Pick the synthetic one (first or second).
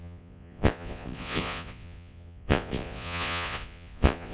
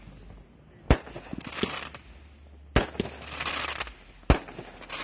first